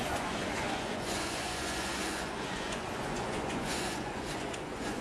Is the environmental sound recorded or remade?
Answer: remade